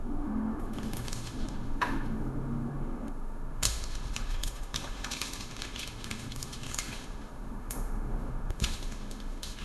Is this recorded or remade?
remade